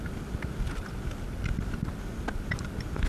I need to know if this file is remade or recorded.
recorded